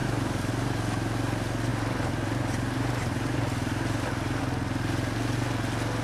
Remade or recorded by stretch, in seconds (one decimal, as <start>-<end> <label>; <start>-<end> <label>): 0.0-0.5 remade; 0.5-1.7 recorded; 1.7-4.4 remade; 4.4-6.0 recorded